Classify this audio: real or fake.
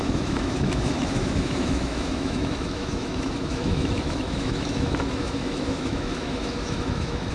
fake